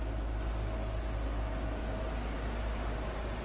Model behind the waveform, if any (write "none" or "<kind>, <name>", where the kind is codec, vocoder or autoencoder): none